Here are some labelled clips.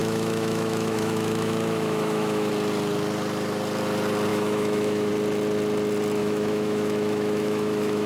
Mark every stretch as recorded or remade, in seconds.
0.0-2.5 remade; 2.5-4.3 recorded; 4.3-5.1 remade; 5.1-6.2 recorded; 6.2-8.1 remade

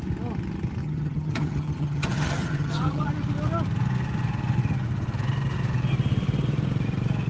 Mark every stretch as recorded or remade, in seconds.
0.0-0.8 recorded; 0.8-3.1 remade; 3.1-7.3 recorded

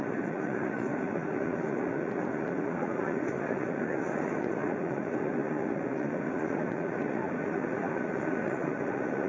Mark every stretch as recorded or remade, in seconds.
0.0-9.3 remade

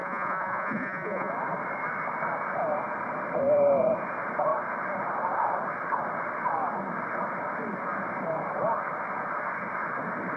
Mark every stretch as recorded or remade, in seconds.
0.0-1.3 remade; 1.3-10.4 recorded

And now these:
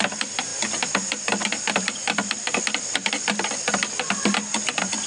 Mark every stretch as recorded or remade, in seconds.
0.0-5.1 recorded

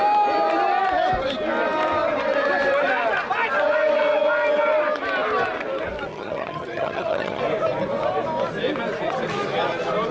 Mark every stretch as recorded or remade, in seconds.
0.0-6.1 recorded; 6.1-7.4 remade; 7.4-10.1 recorded

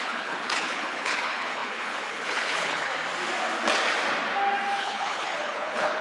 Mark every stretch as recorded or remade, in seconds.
0.0-2.9 remade; 2.9-4.8 recorded; 4.8-6.0 remade

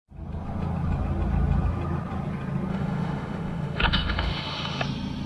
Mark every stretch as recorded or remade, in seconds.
0.0-2.7 recorded; 2.7-4.8 remade; 4.8-5.3 recorded